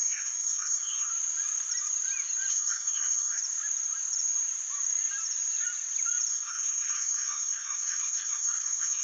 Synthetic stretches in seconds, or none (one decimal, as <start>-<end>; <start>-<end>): 0.0-1.1; 2.5-3.4; 6.3-9.0